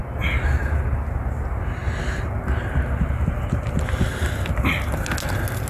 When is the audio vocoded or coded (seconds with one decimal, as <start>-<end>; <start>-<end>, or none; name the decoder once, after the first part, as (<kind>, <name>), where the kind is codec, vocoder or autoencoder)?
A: none